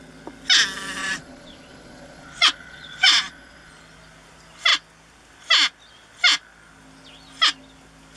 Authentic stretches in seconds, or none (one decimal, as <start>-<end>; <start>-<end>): 0.0-1.0; 3.7-8.2